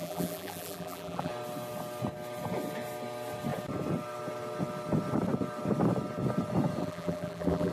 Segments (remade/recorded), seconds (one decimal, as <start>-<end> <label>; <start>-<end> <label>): 0.0-1.3 remade; 1.3-6.8 recorded; 6.8-7.7 remade